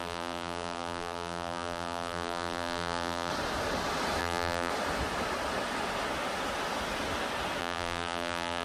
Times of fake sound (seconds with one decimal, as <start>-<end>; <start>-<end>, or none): 0.0-3.3; 4.2-4.7; 7.6-8.6